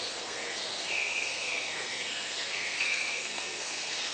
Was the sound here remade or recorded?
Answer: remade